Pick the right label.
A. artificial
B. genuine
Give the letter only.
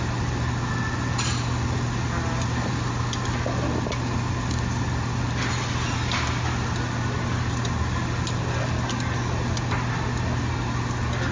B